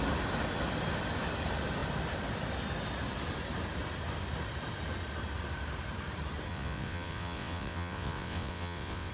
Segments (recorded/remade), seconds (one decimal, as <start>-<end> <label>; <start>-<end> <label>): 0.0-6.5 recorded; 6.5-9.1 remade

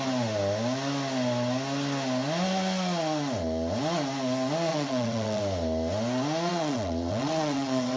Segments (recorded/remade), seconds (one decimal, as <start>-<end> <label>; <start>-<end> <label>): 0.0-4.7 recorded; 4.7-5.4 remade; 5.4-6.5 recorded; 6.5-8.0 remade